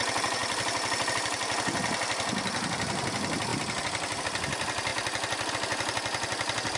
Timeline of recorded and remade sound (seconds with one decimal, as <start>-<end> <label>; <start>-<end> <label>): 0.0-6.8 recorded